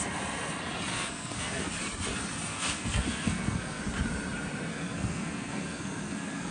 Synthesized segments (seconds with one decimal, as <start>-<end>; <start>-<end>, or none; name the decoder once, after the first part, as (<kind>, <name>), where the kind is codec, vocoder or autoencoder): 0.9-1.7 (codec, SNAC); 2.5-3.8; 4.7-6.5